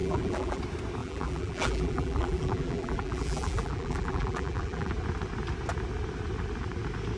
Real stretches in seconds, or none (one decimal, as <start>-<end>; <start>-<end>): 0.6-1.0; 4.9-7.2